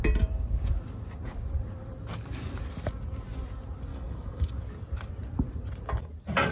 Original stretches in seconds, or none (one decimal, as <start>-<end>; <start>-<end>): 0.0-3.9; 4.5-6.5